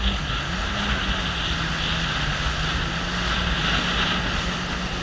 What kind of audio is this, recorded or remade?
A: recorded